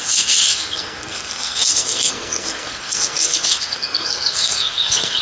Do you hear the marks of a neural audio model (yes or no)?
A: yes